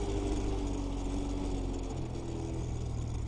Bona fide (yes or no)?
yes